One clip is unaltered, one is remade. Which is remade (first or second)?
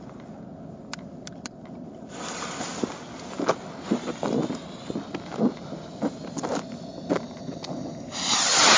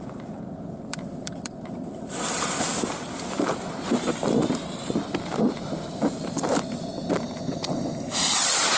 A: second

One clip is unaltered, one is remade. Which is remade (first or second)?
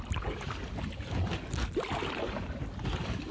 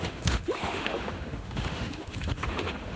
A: second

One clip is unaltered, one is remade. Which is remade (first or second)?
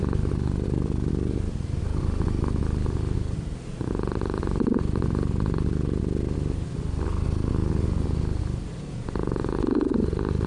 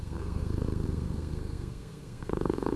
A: second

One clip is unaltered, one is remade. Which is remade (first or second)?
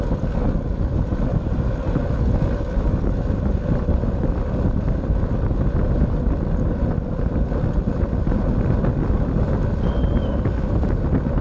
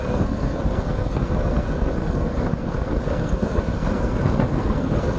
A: second